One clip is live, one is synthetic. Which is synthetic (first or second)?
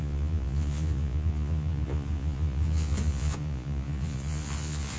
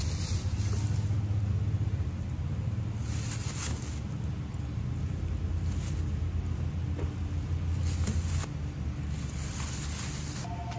first